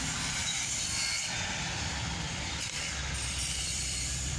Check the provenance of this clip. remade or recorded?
remade